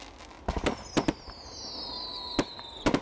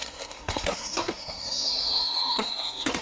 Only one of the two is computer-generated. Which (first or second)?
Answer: second